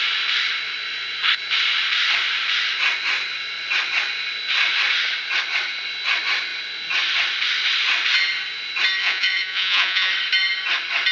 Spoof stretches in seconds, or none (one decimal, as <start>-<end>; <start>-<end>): 9.0-10.1